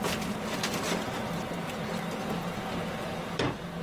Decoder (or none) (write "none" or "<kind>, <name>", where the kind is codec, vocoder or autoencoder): none